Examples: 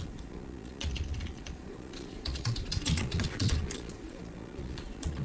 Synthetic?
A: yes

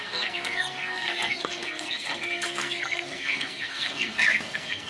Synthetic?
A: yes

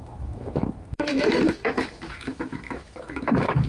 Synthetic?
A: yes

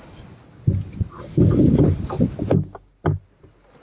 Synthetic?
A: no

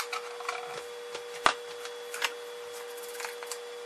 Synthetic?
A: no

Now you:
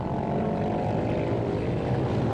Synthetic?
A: no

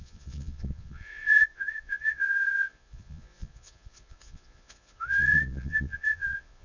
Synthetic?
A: yes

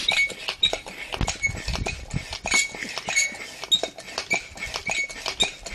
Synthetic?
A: no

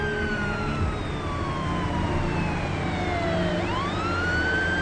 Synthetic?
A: yes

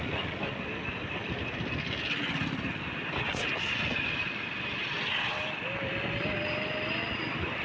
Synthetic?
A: no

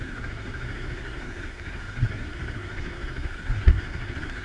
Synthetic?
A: yes